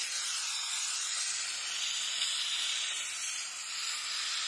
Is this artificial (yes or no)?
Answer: no